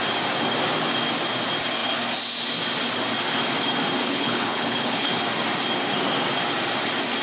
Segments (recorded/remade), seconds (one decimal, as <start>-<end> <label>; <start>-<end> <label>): 0.0-4.0 recorded; 4.0-5.2 remade; 5.2-7.2 recorded